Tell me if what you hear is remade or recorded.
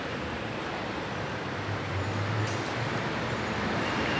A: remade